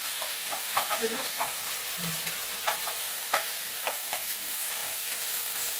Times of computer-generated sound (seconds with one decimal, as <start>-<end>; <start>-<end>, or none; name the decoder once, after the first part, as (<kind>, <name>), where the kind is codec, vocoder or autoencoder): 0.0-1.7 (codec, DAC); 3.0-5.8